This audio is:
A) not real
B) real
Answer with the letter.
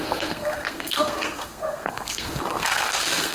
A